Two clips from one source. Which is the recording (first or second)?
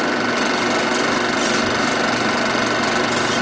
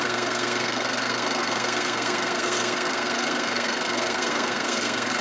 first